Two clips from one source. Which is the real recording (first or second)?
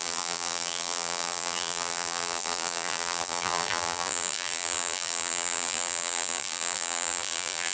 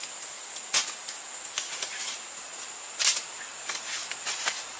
second